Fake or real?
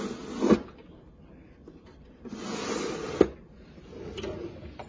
real